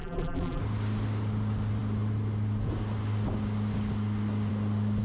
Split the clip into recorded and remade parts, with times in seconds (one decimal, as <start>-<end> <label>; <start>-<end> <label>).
0.0-0.6 remade; 0.6-5.0 recorded